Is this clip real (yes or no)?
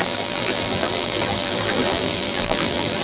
no